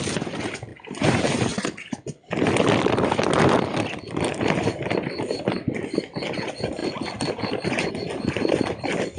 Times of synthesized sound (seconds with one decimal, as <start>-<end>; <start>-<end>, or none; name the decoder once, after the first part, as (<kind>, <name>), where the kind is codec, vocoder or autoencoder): none